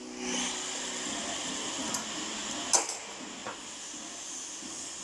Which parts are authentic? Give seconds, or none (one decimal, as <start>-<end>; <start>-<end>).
0.0-5.0